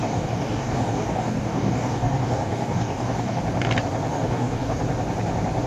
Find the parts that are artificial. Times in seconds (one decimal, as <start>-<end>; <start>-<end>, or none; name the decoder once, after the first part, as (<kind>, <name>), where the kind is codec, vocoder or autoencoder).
0.0-3.4 (codec, DAC); 4.1-4.8

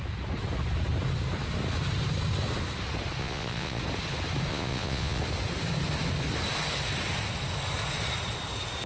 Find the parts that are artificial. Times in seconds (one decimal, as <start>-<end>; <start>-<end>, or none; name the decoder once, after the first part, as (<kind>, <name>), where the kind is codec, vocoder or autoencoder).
3.2-3.8 (vocoder, Vocos); 4.5-5.2